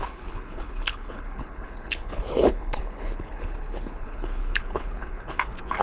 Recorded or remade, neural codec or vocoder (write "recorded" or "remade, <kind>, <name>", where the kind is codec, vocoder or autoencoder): remade, codec, HILCodec